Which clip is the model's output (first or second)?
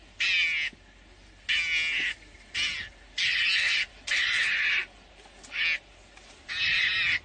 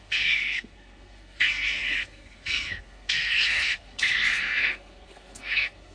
second